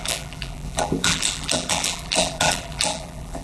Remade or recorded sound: remade